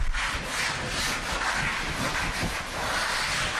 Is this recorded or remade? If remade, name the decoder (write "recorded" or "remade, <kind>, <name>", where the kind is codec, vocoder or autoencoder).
recorded